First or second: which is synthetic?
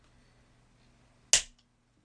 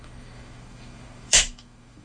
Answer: second